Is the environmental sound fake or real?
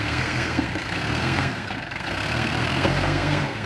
fake